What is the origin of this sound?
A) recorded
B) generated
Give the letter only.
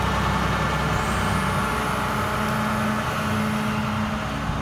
A